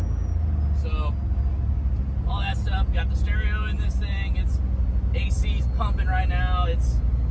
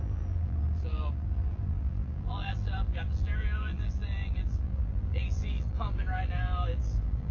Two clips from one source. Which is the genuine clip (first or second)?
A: first